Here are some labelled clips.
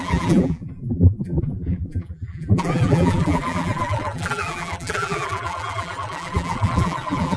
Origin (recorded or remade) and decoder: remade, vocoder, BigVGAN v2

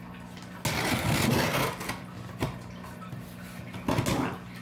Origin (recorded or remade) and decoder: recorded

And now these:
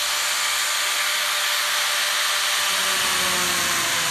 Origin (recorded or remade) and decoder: recorded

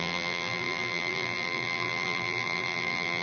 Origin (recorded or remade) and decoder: remade, vocoder, BigVGAN v2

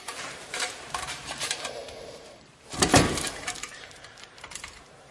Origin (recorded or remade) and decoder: remade, vocoder, BigVGAN v2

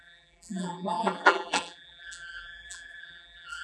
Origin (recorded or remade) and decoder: remade, vocoder, BigVGAN v2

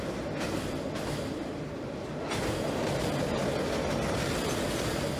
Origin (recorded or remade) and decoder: recorded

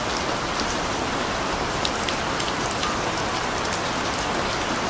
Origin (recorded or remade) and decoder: recorded